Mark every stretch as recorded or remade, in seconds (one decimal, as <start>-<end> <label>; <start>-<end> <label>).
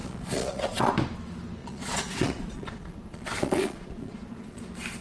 0.0-0.9 remade; 0.9-1.6 recorded; 1.6-4.6 remade; 4.6-5.0 recorded